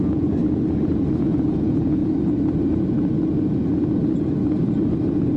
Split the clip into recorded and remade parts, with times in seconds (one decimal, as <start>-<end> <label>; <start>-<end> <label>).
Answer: 0.0-0.4 remade; 0.4-1.2 recorded; 1.2-2.0 remade; 2.0-5.4 recorded